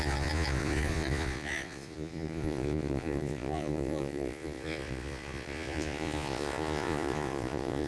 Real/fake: fake